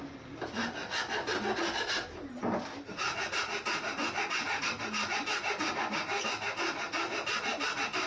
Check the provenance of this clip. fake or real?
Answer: real